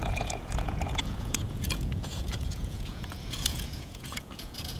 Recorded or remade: remade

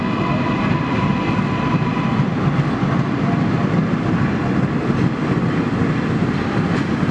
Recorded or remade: recorded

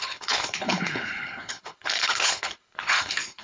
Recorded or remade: remade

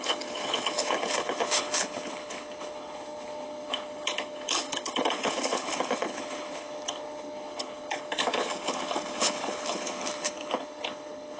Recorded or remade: remade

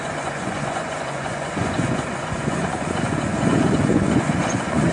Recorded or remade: remade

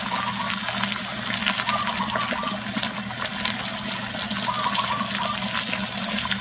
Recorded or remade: recorded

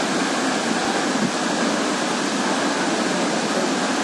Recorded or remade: recorded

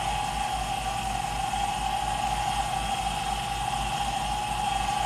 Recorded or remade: recorded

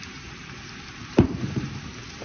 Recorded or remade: remade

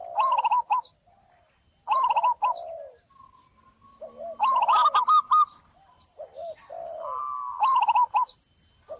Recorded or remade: recorded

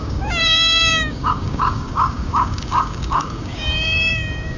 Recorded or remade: remade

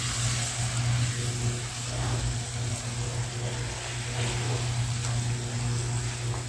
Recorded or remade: recorded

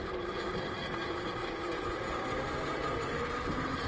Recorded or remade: recorded